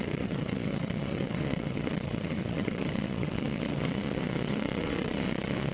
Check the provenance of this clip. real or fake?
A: fake